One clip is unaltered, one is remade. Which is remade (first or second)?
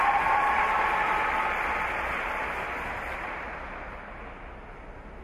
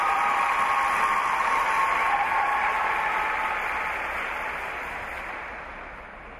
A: second